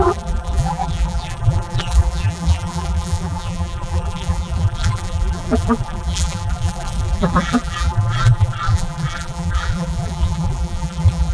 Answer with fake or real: fake